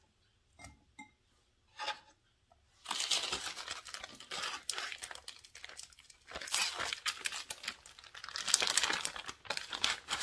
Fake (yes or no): no